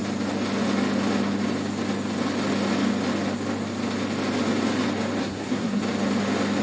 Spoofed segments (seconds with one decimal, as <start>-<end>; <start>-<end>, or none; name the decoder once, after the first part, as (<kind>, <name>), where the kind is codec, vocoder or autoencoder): 5.2-5.8 (codec, SNAC)